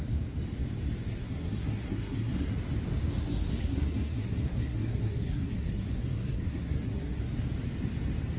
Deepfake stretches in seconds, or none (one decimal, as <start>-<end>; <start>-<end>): 1.1-2.6; 3.6-7.2